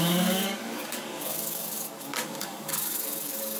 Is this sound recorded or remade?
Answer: remade